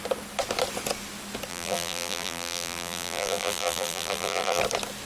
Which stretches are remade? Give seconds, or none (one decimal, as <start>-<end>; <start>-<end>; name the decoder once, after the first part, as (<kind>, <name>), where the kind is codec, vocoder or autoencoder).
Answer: 1.5-4.6 (vocoder, BigVGAN v2)